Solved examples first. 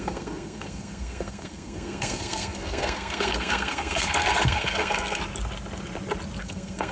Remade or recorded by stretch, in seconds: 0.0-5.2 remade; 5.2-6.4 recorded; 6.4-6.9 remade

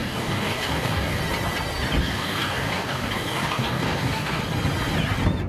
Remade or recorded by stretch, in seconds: 0.0-1.2 remade; 1.2-2.0 recorded; 2.0-4.4 remade; 4.4-5.5 recorded

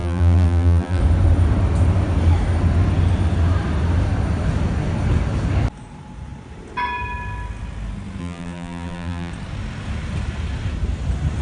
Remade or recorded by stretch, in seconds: 0.0-1.0 remade; 1.0-8.2 recorded; 8.2-9.3 remade; 9.3-11.4 recorded

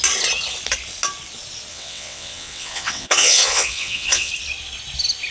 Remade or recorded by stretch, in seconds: 0.0-1.7 recorded; 1.7-4.3 remade; 4.3-5.3 recorded

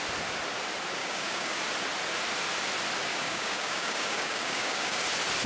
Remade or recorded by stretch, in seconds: 0.0-1.0 recorded; 1.0-1.6 remade; 1.6-3.1 recorded; 3.1-5.0 remade; 5.0-5.5 recorded

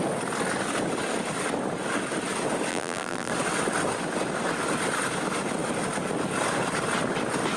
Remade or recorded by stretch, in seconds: 0.0-2.7 recorded; 2.7-3.3 remade; 3.3-7.6 recorded